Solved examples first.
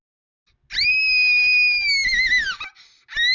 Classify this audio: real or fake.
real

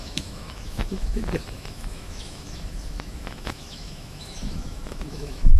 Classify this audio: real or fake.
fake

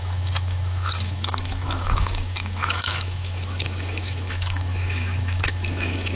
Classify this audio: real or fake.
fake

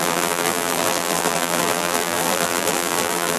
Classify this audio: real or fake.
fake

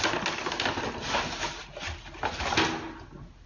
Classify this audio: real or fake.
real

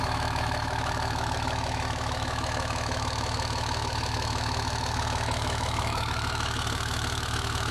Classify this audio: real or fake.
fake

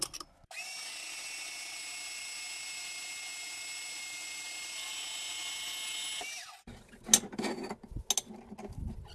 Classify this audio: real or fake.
real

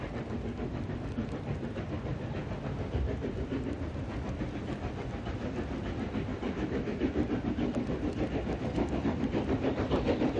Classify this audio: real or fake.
fake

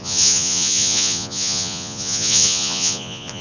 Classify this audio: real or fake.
fake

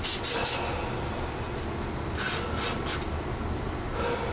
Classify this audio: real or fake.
real